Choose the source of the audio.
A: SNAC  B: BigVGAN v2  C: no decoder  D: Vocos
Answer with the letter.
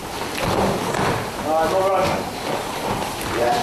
C